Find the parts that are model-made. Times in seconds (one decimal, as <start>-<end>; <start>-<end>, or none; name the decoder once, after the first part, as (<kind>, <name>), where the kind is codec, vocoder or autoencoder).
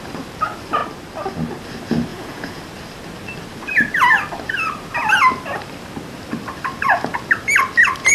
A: 2.1-2.6 (vocoder, Vocos)